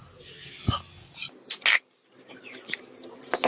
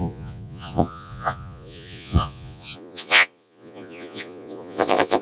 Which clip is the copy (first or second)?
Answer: second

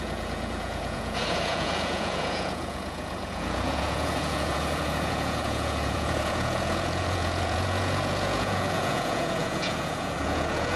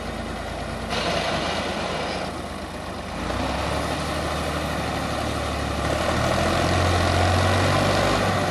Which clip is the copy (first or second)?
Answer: first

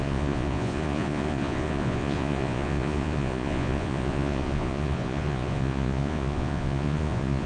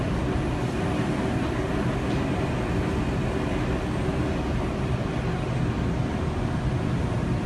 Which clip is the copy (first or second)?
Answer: first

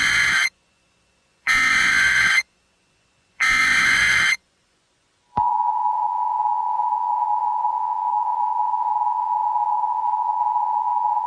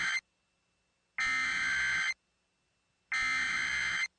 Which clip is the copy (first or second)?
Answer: first